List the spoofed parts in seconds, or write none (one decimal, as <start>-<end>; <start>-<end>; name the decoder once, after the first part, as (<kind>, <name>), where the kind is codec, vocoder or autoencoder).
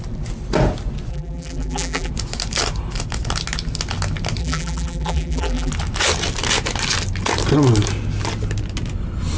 1.1-2.1 (vocoder, BigVGAN v2); 4.4-5.7